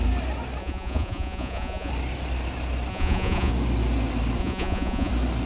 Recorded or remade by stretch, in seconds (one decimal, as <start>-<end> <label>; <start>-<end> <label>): 0.0-0.6 recorded; 0.6-1.9 remade; 1.9-2.9 recorded; 2.9-3.5 remade; 3.5-4.4 recorded; 4.4-5.1 remade; 5.1-5.5 recorded